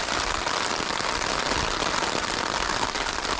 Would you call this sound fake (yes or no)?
no